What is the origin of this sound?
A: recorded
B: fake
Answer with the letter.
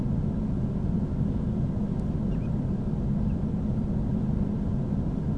A